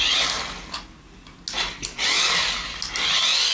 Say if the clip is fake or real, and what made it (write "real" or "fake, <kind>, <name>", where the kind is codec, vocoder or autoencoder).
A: real